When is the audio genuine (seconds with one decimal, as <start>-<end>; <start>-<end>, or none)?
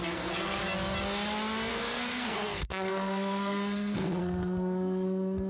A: 0.6-1.7